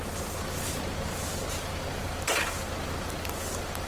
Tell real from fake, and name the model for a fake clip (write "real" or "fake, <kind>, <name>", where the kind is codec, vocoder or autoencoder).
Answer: real